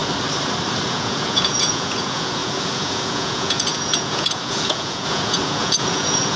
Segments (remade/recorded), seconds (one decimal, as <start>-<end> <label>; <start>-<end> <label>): 0.0-0.9 recorded; 0.9-6.4 remade